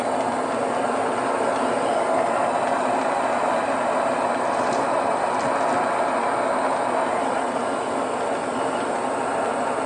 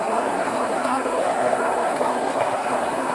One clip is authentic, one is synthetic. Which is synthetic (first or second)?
second